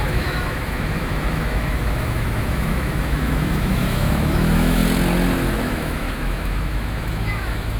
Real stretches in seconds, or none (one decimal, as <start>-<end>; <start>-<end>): 4.8-5.6